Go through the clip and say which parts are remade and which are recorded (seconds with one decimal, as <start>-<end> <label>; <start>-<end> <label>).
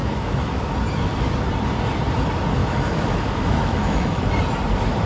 0.0-0.7 remade; 0.7-2.6 recorded; 2.6-4.3 remade; 4.3-5.1 recorded